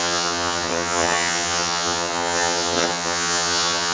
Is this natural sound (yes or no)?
no